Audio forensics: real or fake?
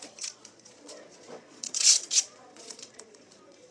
fake